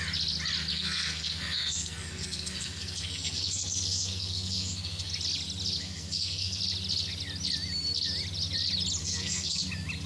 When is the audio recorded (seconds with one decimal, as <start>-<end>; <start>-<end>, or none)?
0.0-0.7; 5.1-5.8; 6.6-9.0; 9.6-10.1